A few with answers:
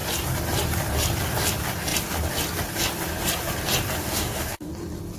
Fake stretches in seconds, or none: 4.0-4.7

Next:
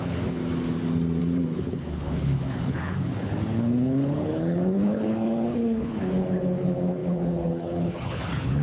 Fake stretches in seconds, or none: 0.0-0.4; 1.2-8.6

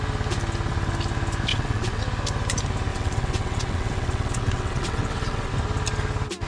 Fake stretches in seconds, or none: 1.5-2.0; 2.9-5.5

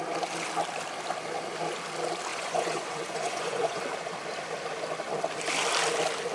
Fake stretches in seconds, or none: 2.3-3.8